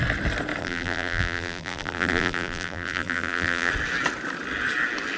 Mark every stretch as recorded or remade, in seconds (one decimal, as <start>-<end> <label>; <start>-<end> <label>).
0.0-0.6 recorded; 0.6-3.7 remade; 3.7-5.2 recorded